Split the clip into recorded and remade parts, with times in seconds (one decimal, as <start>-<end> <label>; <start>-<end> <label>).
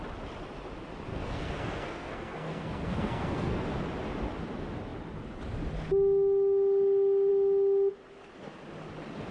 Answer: 0.0-1.1 recorded; 1.1-3.6 remade; 3.6-9.3 recorded